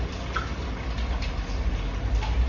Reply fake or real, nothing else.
real